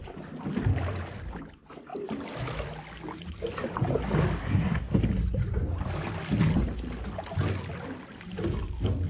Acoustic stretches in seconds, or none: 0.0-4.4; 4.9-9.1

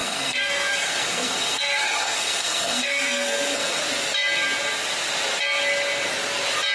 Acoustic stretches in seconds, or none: 3.8-6.7

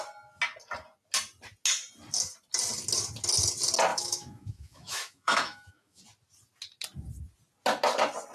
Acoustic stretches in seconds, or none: 0.0-3.9; 6.0-8.3

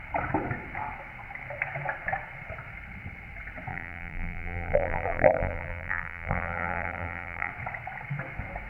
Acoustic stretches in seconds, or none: 0.0-3.7; 7.5-8.7

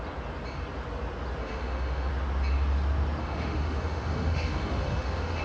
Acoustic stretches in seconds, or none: 0.0-1.4; 2.1-3.2

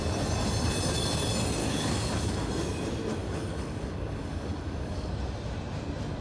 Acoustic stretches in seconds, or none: 0.0-1.6; 2.5-3.2; 5.1-6.2